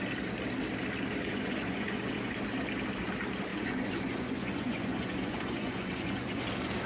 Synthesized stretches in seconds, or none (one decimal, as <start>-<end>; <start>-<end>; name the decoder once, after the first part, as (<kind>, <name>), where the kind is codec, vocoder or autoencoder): 1.2-2.3 (vocoder, Vocos); 3.5-6.4